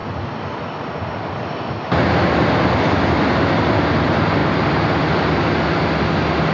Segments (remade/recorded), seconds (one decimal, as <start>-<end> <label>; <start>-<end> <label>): 0.0-6.5 recorded